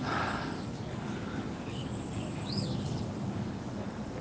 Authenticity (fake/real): fake